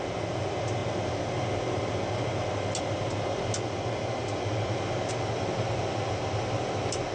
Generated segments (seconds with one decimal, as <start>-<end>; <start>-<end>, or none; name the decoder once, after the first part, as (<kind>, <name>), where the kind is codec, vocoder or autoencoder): none